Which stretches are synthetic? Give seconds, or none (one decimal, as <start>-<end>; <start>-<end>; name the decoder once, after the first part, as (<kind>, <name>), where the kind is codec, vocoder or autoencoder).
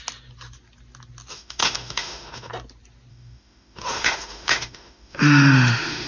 1.3-2.5 (autoencoder, DAC-VAE); 3.1-6.1